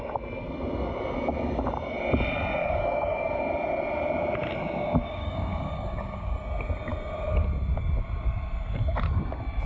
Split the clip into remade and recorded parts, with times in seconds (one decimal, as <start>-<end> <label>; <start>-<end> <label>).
0.0-2.6 recorded; 2.6-3.4 remade; 3.4-5.0 recorded; 5.0-6.3 remade; 6.3-9.7 recorded